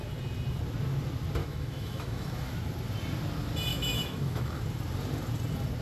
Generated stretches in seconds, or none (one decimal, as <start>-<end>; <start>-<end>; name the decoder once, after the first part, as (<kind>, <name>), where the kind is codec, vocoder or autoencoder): 1.4-2.5 (autoencoder, DAC-VAE); 3.7-4.6